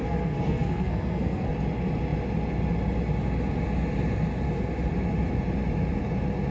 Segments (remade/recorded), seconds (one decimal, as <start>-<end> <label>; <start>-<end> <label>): 0.0-1.5 remade; 1.5-6.5 recorded